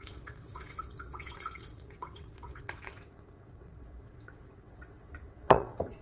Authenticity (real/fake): fake